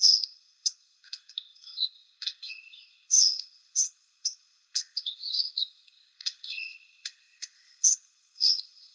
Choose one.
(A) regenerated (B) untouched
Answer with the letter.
A